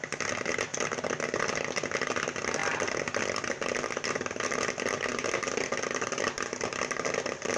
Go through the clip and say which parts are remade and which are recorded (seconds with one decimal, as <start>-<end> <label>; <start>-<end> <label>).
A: 0.0-2.6 recorded; 2.6-7.6 remade